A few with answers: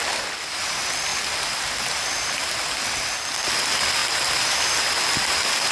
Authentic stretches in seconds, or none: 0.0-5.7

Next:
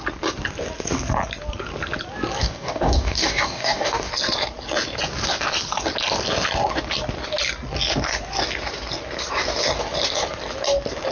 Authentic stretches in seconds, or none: 0.0-2.4; 4.1-11.1